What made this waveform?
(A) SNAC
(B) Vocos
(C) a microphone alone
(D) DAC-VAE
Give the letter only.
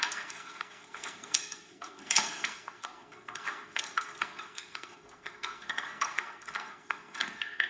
A